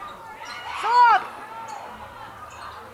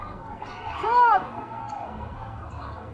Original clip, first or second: first